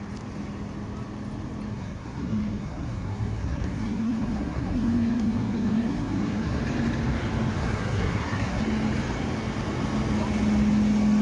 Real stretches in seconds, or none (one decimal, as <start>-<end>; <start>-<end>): 0.0-1.7; 6.6-7.6; 8.6-11.2